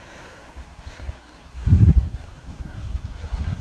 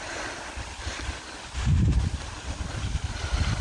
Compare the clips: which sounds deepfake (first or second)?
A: first